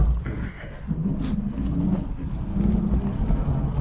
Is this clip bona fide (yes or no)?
yes